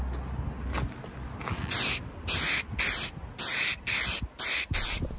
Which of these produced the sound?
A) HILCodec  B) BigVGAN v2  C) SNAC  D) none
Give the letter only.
D